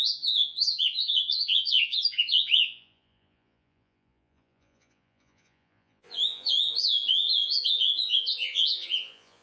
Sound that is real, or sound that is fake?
fake